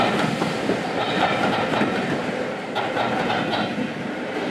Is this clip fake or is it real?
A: real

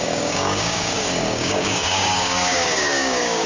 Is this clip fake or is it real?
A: fake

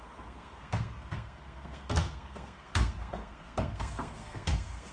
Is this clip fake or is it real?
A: fake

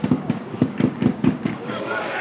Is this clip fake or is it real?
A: fake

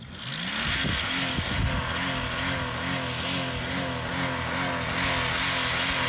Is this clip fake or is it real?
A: real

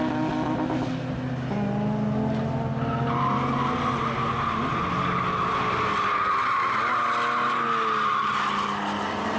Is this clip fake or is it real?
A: real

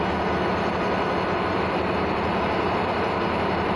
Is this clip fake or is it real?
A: real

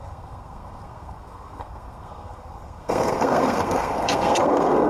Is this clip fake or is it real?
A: fake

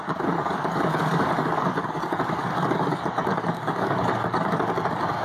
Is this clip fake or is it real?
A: fake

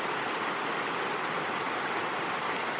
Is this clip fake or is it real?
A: real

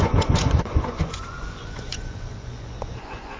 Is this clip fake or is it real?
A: fake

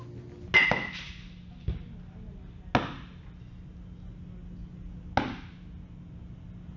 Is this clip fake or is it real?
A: real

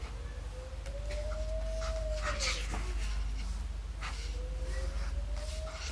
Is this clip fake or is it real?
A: real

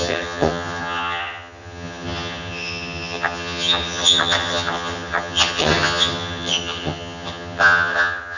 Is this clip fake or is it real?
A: fake